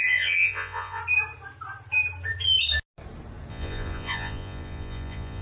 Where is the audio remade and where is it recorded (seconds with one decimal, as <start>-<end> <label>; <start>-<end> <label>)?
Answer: 0.0-1.0 remade; 1.0-3.5 recorded; 3.5-5.4 remade